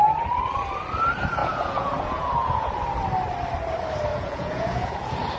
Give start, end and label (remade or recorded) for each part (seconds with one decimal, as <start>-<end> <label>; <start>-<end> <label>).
0.0-1.4 recorded; 1.4-2.7 remade; 2.7-4.1 recorded; 4.1-5.4 remade